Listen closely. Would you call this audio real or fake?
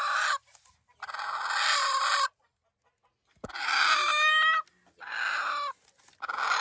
real